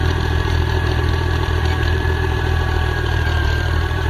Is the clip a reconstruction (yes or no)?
yes